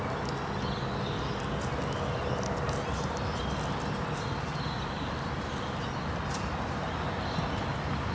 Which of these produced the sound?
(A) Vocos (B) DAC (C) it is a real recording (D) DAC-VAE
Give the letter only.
C